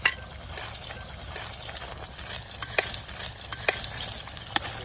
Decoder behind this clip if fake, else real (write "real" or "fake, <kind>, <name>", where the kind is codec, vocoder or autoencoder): real